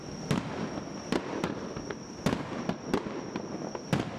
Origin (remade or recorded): recorded